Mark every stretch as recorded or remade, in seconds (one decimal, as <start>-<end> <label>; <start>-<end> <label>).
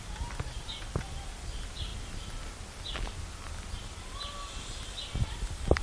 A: 0.0-5.8 recorded